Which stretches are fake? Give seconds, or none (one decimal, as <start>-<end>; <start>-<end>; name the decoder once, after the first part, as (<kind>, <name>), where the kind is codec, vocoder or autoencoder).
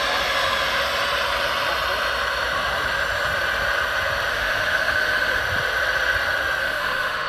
4.3-5.4 (autoencoder, DAC-VAE); 6.6-7.3